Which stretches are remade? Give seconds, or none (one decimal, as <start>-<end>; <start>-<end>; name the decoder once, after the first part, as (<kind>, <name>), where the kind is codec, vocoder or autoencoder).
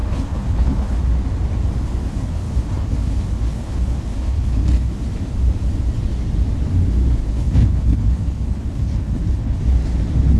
0.0-1.0 (codec, HILCodec); 2.1-5.0; 7.2-9.6